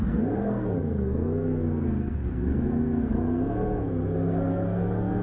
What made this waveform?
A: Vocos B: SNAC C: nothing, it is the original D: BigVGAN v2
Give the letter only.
B